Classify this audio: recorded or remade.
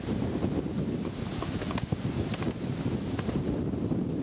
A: remade